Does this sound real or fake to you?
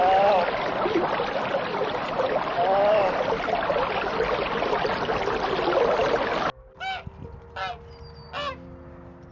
real